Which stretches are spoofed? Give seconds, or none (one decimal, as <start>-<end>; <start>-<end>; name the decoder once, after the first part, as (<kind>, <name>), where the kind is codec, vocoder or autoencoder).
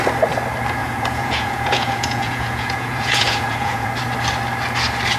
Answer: 0.8-3.9 (vocoder, Vocos)